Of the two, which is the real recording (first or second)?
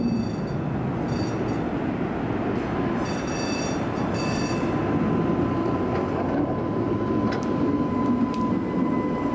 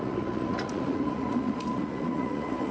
first